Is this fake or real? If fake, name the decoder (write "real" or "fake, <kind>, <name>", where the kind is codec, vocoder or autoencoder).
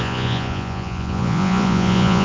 fake, vocoder, Vocos